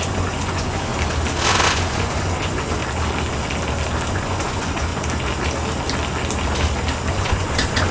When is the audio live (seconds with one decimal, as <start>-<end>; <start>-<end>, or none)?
0.9-1.5; 2.8-4.1; 4.9-7.1